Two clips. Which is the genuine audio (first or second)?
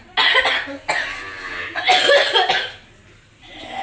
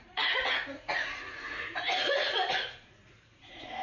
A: first